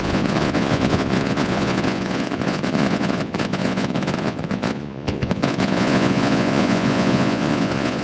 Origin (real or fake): fake